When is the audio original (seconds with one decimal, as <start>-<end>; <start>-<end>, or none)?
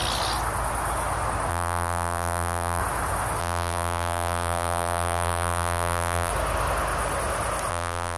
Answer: 0.0-1.5; 2.8-3.4; 6.3-7.7